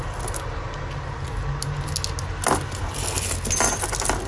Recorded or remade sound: recorded